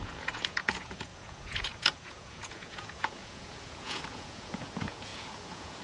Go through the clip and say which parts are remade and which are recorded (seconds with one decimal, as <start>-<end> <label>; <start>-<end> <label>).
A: 0.0-5.8 remade